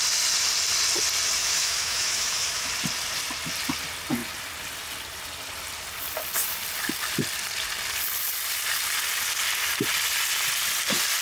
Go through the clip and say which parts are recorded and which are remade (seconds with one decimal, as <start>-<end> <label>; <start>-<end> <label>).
0.0-1.4 recorded; 1.4-2.7 remade; 2.7-11.2 recorded